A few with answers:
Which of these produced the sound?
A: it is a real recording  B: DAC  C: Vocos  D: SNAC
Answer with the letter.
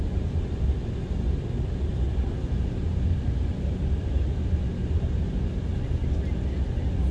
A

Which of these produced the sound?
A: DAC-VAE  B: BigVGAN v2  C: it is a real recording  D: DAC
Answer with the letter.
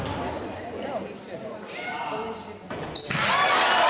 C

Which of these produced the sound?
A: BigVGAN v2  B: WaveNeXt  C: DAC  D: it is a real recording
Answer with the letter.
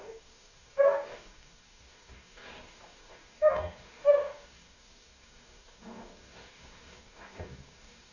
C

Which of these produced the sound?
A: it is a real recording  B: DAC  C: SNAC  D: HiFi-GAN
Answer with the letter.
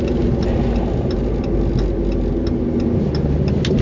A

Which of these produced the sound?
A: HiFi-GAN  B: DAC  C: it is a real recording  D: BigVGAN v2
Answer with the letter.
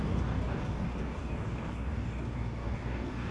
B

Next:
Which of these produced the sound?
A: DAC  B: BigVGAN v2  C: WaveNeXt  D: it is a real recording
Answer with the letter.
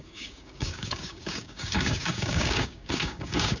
A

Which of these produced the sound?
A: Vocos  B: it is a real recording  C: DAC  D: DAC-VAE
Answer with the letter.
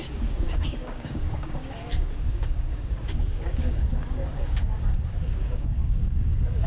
C